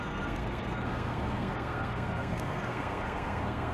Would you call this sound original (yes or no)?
no